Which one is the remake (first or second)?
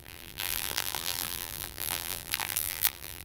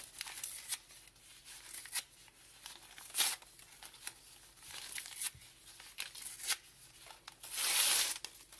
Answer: first